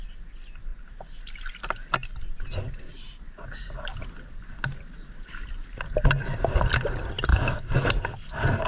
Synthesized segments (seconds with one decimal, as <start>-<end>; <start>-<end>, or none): 7.3-7.8